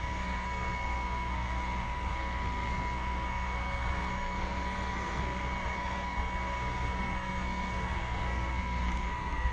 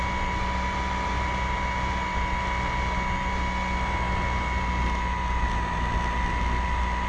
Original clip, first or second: second